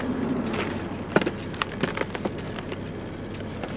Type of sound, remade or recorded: recorded